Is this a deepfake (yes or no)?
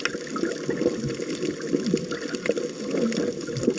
no